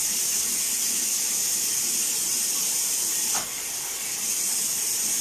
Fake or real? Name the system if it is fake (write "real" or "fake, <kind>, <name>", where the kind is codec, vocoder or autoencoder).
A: real